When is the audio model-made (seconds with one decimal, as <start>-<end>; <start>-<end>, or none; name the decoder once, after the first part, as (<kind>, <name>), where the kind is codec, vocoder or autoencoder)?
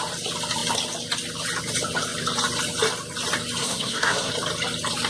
3.6-4.3 (codec, SNAC)